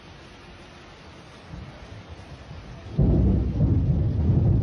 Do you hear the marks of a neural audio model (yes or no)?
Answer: no